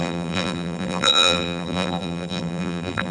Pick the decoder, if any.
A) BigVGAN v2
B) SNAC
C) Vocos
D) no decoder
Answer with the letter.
A